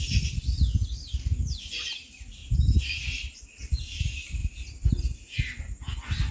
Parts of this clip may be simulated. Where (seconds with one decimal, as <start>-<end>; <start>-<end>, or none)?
2.4-3.4